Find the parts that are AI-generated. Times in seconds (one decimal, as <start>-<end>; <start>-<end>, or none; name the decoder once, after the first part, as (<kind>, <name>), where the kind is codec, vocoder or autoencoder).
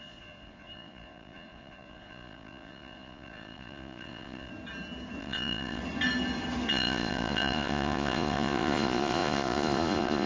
0.0-4.5 (vocoder, Vocos); 5.2-5.8; 6.7-10.3